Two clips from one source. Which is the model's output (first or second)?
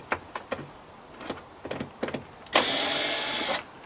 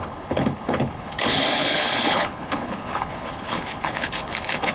second